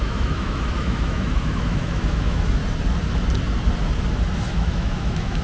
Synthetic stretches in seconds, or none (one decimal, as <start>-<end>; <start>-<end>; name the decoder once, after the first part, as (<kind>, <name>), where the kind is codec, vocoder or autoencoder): 0.0-2.6 (autoencoder, DAC-VAE); 4.5-5.4